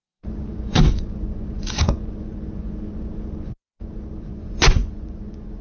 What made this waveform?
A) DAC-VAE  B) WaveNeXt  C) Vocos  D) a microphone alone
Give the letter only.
C